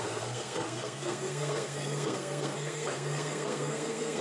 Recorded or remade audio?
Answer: remade